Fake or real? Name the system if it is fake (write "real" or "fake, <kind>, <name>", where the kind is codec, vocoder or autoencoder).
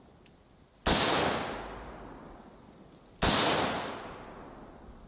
real